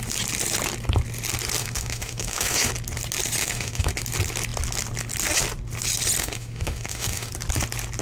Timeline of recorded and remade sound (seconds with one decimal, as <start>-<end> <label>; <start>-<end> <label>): 0.0-1.6 recorded; 1.6-2.7 remade; 2.7-3.4 recorded; 3.4-3.9 remade; 3.9-6.2 recorded; 6.2-7.3 remade; 7.3-8.0 recorded